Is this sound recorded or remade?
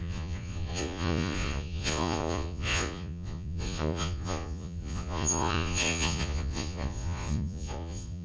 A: remade